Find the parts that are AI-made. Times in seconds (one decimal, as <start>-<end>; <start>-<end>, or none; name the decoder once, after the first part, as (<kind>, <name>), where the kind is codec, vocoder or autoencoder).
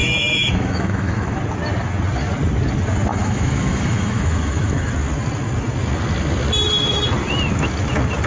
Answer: 0.0-1.4 (autoencoder, DAC-VAE); 3.1-4.9